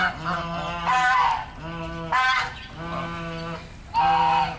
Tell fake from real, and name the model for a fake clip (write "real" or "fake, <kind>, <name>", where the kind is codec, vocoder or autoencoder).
real